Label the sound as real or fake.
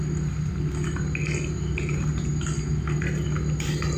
real